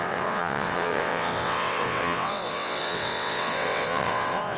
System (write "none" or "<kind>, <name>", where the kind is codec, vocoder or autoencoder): vocoder, WaveNeXt